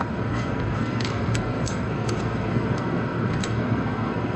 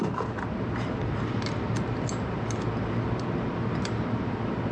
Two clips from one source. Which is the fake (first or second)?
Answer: first